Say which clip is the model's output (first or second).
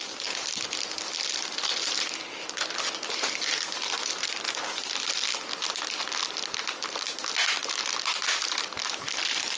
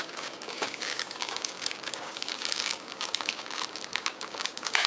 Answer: second